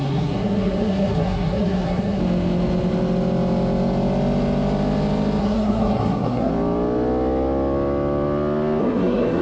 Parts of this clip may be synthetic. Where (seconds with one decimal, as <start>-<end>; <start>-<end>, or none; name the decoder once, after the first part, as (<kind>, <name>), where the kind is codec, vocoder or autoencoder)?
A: 0.0-2.2 (codec, SNAC); 5.4-6.5; 8.8-9.4